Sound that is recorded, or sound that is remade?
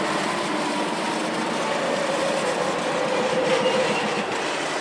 recorded